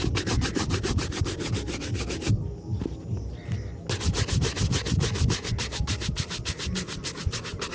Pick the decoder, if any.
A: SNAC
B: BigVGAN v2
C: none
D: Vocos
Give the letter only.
C